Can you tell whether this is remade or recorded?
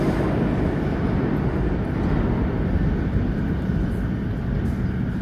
recorded